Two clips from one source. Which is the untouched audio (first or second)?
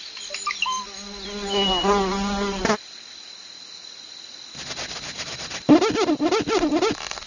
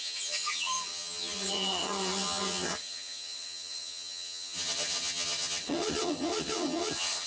first